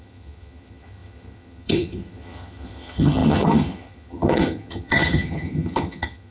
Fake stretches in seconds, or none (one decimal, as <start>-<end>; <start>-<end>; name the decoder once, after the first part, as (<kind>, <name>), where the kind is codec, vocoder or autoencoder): 0.0-6.3 (vocoder, HiFi-GAN)